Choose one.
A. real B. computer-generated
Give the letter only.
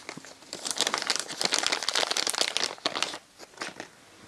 A